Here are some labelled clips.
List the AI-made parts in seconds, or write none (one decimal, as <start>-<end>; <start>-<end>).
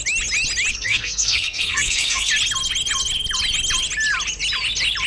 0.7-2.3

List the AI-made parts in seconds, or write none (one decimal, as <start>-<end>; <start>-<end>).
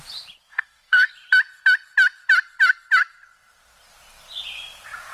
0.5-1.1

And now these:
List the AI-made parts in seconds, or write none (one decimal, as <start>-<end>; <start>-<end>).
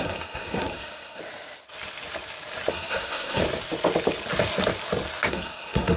0.0-1.2; 2.7-3.4; 5.3-6.0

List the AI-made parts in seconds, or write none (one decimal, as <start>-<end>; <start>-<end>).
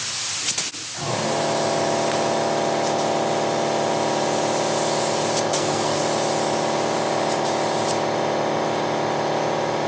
5.5-6.0